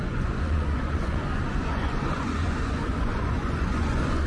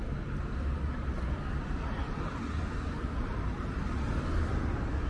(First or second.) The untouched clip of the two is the second